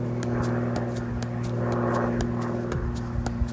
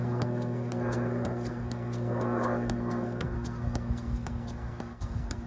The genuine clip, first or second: first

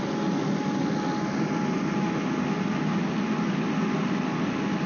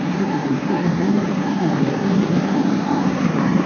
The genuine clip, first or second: first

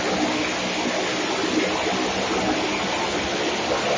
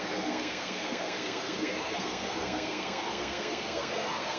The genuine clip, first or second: first